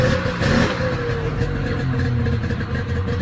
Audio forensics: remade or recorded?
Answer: recorded